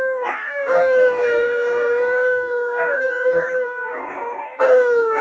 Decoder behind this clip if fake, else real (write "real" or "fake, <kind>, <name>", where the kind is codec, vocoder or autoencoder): fake, codec, DAC